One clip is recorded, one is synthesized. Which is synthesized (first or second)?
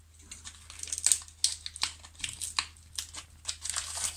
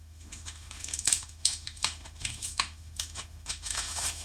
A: second